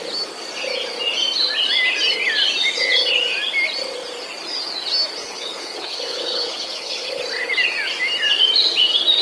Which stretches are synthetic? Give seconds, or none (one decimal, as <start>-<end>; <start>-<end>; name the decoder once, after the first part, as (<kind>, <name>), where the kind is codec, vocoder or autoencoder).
5.2-7.2 (codec, HILCodec)